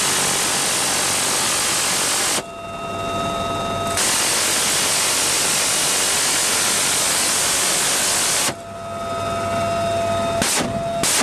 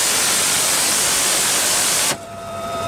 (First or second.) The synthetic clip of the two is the second